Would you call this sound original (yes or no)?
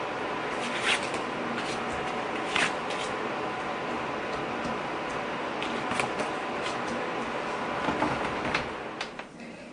yes